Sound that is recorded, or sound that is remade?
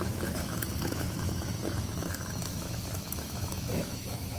remade